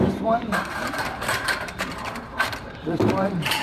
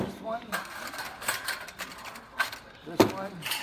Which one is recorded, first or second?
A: second